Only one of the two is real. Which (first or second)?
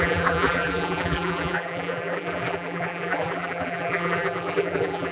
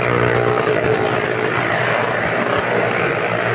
second